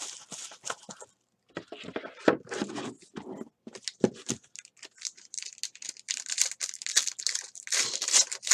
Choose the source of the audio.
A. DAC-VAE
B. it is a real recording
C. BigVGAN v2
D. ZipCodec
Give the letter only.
B